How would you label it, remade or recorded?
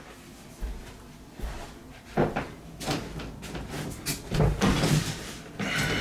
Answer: recorded